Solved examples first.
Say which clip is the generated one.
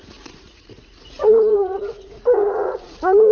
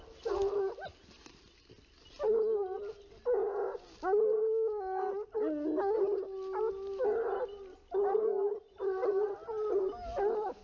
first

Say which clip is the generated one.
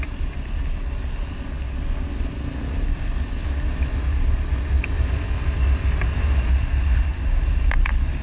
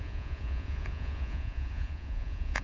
second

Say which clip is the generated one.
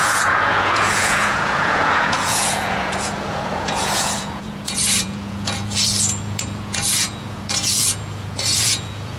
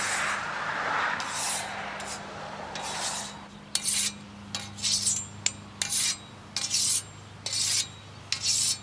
first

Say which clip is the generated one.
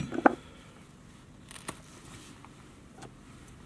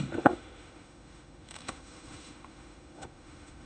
second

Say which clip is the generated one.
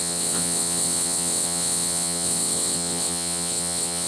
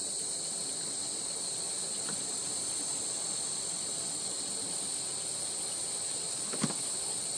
first